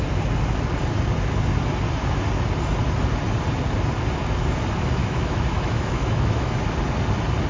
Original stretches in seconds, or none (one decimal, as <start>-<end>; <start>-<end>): 0.0-5.0; 6.6-7.5

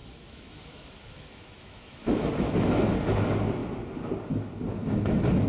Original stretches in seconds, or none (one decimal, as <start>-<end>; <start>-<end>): 2.9-5.5